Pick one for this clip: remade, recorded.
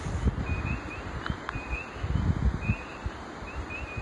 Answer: recorded